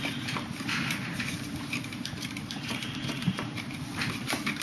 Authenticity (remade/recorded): remade